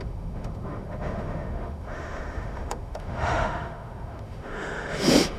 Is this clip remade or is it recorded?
remade